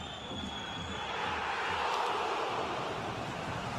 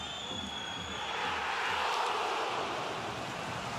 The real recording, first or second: second